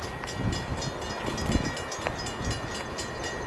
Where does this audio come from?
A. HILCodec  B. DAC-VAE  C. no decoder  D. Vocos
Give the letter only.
C